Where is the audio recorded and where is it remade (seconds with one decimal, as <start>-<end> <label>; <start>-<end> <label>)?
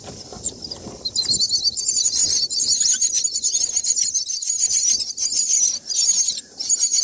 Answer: 0.0-7.0 recorded